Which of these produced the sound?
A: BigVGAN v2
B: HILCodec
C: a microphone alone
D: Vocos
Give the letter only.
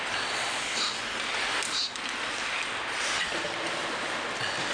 C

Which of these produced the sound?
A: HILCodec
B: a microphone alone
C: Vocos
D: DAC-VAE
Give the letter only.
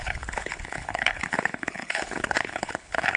A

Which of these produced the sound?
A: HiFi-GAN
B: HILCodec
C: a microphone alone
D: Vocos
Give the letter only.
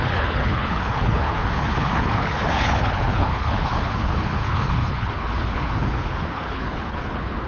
B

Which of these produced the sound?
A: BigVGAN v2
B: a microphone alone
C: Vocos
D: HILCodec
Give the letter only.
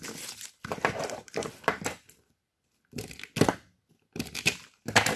B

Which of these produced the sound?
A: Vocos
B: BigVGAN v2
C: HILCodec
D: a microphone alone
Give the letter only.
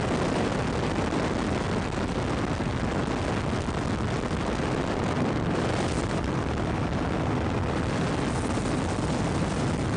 D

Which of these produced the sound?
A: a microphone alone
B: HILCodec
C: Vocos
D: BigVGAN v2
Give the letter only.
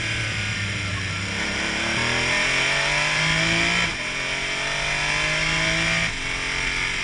A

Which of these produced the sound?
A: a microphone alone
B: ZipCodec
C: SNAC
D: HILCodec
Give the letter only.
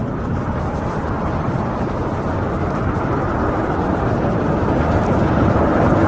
A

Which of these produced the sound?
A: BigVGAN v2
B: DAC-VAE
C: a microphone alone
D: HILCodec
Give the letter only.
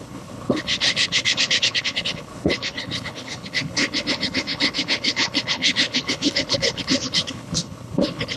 D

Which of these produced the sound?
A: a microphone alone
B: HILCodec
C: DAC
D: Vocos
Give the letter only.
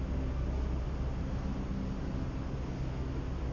A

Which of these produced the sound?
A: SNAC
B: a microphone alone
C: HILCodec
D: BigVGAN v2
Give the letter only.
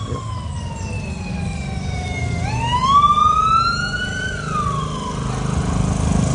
B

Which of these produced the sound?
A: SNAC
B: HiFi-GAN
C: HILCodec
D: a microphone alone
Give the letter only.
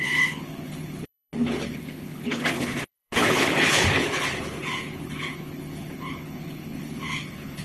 C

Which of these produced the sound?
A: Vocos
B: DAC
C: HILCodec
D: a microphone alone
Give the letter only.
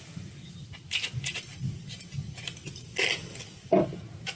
D